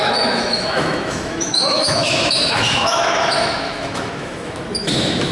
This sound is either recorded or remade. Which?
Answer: remade